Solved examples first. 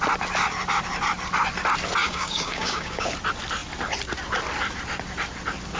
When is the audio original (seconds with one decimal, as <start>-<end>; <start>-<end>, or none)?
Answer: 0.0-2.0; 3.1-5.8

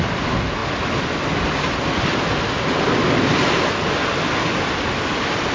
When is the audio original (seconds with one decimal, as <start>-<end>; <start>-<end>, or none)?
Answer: 0.0-5.5

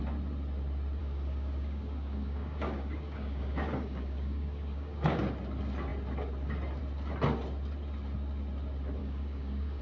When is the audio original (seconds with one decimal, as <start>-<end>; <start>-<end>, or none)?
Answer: 0.0-1.0; 5.2-9.0